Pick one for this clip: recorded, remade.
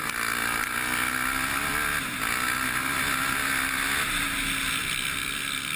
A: recorded